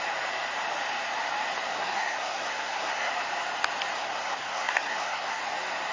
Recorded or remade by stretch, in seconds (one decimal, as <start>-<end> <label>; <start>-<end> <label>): 0.0-1.7 recorded; 1.7-3.1 remade; 3.1-3.9 recorded; 3.9-5.4 remade; 5.4-5.9 recorded